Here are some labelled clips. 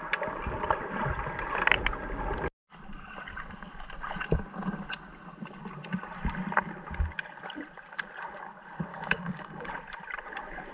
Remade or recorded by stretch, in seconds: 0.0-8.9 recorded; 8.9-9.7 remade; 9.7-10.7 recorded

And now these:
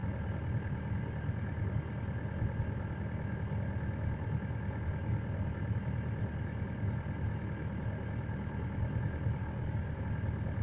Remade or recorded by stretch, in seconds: 0.0-9.4 recorded; 9.4-10.0 remade; 10.0-10.6 recorded

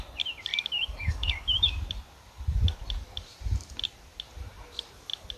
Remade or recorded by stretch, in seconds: 0.0-0.5 recorded; 0.5-1.7 remade; 1.7-5.4 recorded

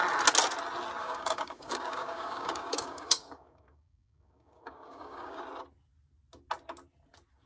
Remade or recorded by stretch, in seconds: 0.0-1.0 recorded; 1.0-5.4 remade; 5.4-7.5 recorded

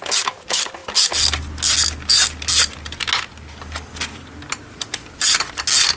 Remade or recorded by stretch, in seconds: 0.0-6.0 recorded

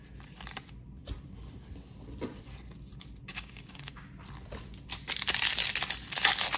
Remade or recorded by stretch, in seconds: 0.0-3.3 recorded; 3.3-4.1 remade; 4.1-6.6 recorded